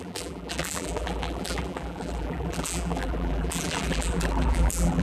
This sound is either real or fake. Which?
fake